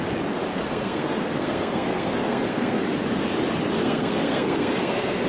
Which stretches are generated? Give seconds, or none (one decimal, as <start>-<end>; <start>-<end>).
0.5-2.8; 3.8-5.3